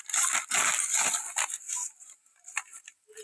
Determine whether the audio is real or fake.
real